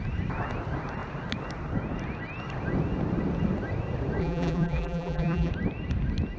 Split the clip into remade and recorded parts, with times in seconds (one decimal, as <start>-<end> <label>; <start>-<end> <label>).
0.0-4.2 recorded; 4.2-5.5 remade; 5.5-6.4 recorded